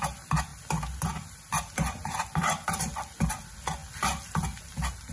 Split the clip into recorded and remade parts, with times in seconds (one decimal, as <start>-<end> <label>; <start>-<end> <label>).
0.0-5.1 recorded